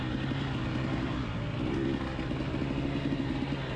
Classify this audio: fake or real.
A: real